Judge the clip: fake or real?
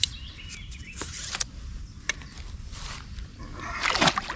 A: real